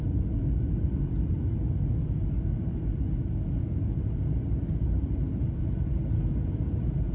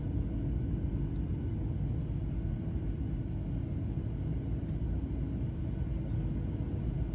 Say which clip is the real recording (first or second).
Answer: second